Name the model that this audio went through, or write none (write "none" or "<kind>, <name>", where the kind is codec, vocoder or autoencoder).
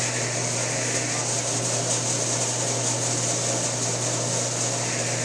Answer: none